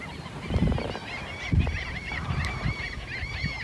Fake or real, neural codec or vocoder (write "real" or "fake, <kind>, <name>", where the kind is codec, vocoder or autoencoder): fake, vocoder, BigVGAN v2